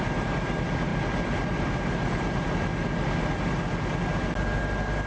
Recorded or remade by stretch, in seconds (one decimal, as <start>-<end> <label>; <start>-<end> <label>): 0.0-5.1 recorded